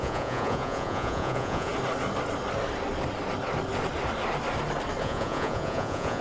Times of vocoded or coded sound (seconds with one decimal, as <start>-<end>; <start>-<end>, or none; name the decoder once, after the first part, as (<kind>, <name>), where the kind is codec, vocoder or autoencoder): 0.0-1.7 (vocoder, Vocos); 5.0-6.2

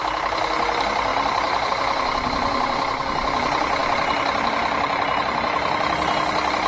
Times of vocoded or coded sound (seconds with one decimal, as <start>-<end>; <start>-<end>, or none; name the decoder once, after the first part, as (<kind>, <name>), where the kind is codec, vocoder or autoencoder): none